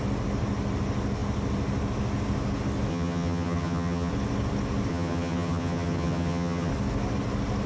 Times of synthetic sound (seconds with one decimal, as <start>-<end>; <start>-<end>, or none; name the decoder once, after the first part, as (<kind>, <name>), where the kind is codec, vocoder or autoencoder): 2.9-4.1 (vocoder, HiFi-GAN); 4.9-6.7